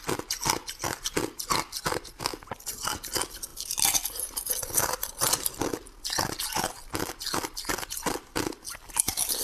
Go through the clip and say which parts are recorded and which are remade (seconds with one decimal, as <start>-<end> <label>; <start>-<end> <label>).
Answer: 0.0-9.4 recorded